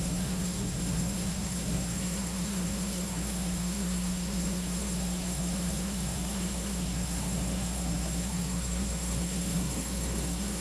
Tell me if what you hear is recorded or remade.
remade